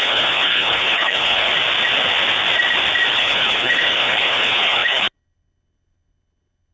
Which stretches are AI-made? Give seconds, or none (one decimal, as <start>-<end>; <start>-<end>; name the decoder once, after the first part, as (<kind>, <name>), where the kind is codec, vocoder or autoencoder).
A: 0.0-1.5 (codec, HILCodec); 3.1-6.7